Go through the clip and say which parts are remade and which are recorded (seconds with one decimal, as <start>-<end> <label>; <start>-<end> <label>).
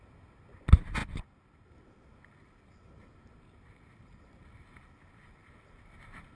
0.0-6.4 recorded